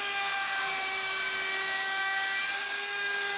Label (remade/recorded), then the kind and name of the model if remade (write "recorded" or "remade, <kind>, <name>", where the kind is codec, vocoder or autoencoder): remade, codec, DAC